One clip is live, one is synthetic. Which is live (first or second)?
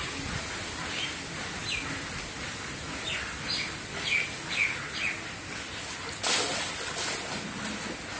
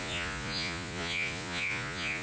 first